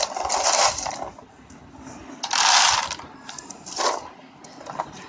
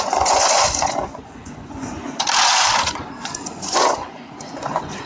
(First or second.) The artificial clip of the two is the second